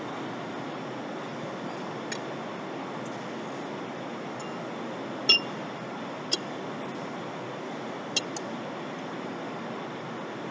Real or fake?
real